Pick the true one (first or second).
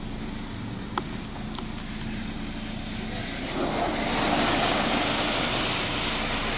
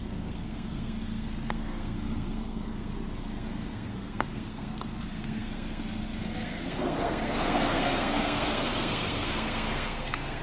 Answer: first